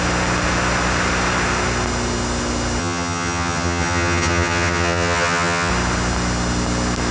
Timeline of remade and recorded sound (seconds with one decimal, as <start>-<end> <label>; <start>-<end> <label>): 0.0-2.8 recorded; 2.8-5.7 remade; 5.7-7.1 recorded